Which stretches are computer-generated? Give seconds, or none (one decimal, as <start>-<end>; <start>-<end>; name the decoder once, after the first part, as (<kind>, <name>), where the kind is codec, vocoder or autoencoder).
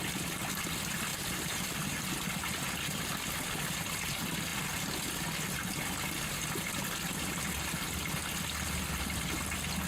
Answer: 1.1-2.0 (vocoder, BigVGAN v2)